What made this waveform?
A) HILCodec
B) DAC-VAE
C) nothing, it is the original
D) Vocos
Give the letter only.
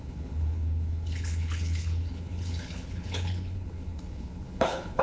A